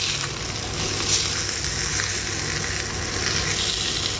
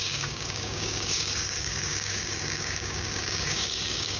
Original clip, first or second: first